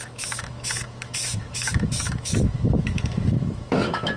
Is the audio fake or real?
fake